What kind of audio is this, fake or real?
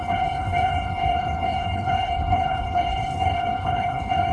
fake